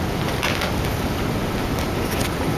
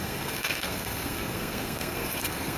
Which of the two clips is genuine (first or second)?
first